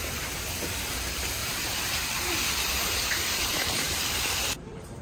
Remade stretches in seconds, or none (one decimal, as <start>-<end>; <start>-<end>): 0.0-5.0